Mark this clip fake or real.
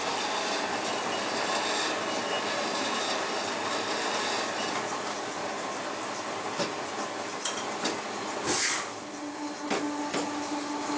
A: real